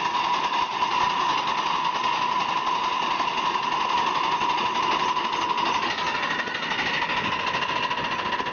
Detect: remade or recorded recorded